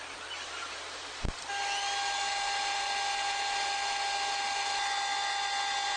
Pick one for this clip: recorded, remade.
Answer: recorded